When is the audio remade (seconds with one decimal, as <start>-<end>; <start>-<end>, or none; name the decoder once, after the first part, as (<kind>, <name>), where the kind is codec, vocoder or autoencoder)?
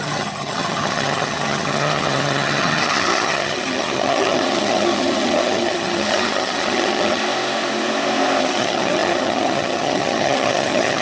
0.0-7.2 (vocoder, HiFi-GAN); 8.4-11.0